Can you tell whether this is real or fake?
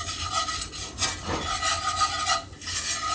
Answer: real